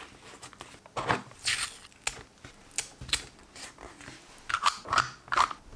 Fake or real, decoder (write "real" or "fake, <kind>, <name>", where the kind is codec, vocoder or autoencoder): real